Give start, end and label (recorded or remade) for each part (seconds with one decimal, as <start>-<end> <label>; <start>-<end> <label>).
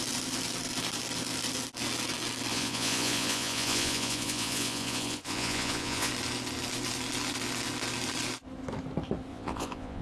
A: 0.0-2.5 recorded; 2.5-6.1 remade; 6.1-9.3 recorded; 9.3-10.0 remade